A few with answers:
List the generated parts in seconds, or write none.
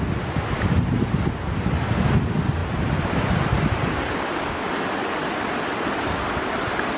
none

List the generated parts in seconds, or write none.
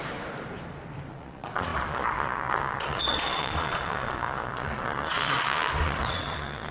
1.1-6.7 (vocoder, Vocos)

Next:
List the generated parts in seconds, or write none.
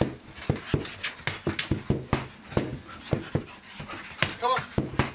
none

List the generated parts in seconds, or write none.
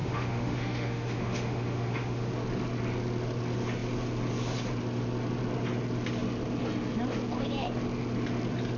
0.0-2.3 (autoencoder, DAC-VAE)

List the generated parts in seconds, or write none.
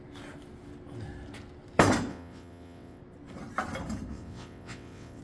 2.1-3.0 (vocoder, WaveNeXt); 4.1-5.2